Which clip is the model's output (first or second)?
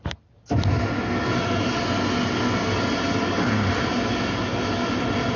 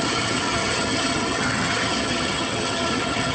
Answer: second